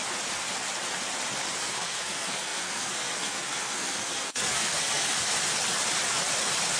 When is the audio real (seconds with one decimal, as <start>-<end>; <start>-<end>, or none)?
0.0-1.6; 5.1-6.8